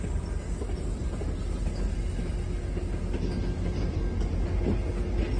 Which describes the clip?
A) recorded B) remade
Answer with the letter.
A